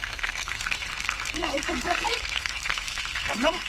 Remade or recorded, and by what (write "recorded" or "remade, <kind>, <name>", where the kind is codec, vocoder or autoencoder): remade, codec, SNAC